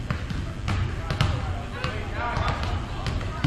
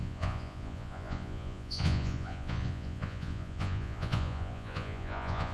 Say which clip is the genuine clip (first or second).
first